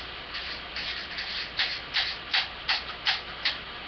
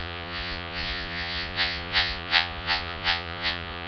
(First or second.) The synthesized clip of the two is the second